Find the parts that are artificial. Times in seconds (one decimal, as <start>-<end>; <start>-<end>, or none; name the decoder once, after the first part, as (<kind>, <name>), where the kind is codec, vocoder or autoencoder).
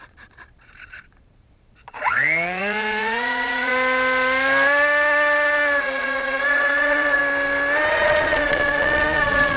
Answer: 0.0-3.7 (vocoder, Vocos); 5.8-7.2; 7.9-9.6